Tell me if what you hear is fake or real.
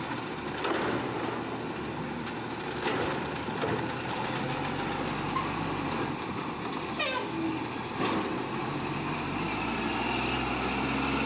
real